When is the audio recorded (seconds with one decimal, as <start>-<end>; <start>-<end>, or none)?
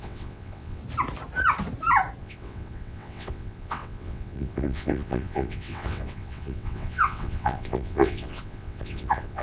0.8-2.2